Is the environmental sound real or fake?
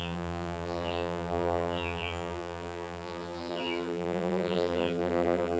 fake